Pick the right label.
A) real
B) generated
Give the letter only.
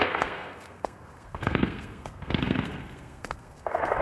B